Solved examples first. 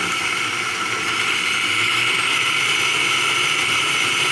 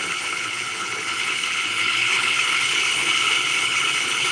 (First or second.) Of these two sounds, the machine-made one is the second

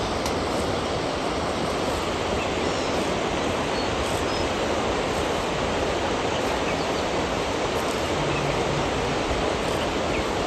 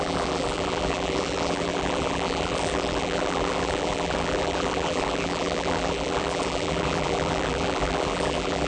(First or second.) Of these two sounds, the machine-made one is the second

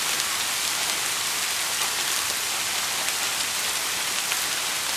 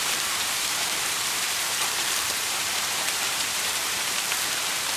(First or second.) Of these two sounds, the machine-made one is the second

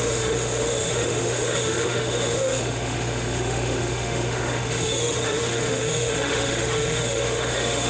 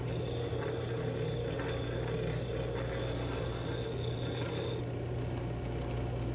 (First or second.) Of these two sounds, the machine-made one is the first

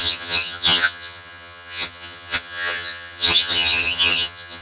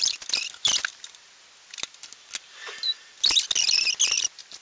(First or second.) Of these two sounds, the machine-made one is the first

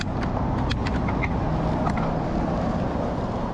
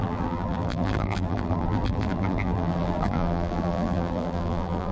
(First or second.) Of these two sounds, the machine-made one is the second